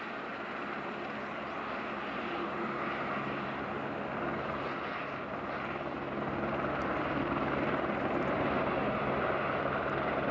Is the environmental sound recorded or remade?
recorded